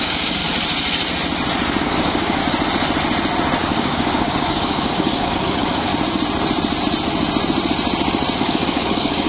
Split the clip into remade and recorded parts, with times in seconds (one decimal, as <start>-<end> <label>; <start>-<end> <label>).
0.0-0.4 remade; 0.4-1.8 recorded; 1.8-2.4 remade; 2.4-3.6 recorded; 3.6-5.9 remade; 5.9-8.4 recorded; 8.4-9.3 remade